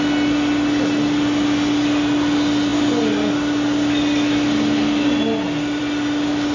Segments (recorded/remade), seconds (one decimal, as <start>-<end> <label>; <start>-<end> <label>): 0.0-6.5 recorded

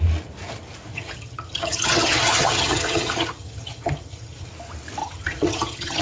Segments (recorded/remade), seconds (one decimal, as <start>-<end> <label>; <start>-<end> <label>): 0.0-0.9 recorded; 0.9-4.5 remade; 4.5-5.0 recorded; 5.0-6.0 remade

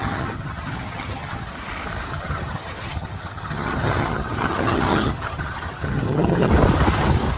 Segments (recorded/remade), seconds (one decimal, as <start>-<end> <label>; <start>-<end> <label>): 0.0-1.5 remade; 1.5-2.1 recorded; 2.1-6.5 remade; 6.5-7.4 recorded